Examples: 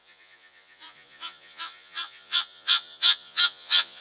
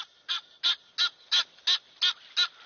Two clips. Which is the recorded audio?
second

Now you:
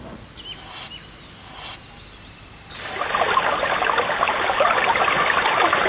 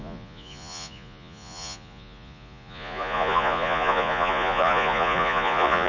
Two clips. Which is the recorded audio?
first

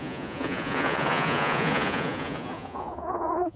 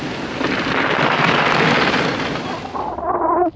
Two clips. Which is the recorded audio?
second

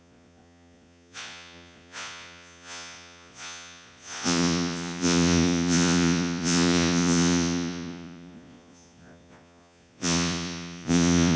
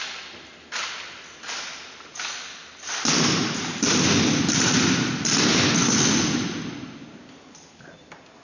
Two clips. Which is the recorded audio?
second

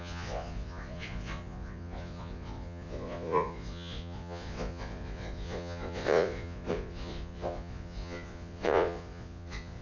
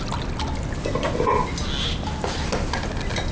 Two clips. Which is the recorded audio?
second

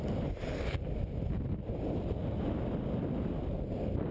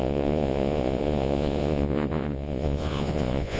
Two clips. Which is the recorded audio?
first